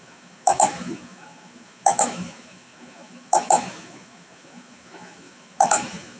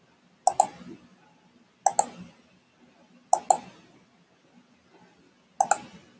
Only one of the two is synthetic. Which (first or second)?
first